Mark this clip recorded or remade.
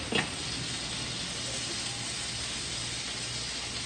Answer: recorded